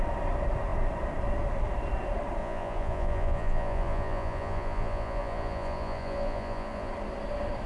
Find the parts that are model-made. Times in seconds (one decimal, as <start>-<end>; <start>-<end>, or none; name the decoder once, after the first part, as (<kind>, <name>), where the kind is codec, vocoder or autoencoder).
2.4-6.9 (vocoder, Vocos)